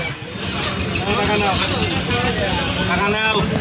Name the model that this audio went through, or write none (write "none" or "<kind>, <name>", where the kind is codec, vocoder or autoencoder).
none